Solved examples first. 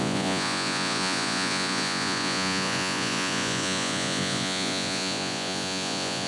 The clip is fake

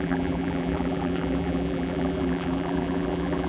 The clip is fake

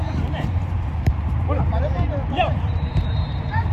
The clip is fake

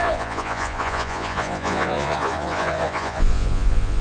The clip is fake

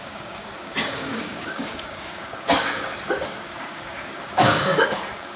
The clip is fake